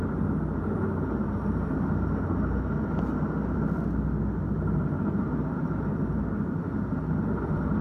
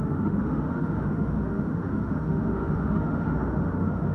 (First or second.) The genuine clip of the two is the first